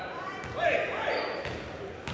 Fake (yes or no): no